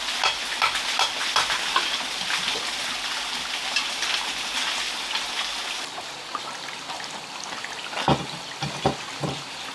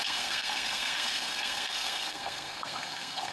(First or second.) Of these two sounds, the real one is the first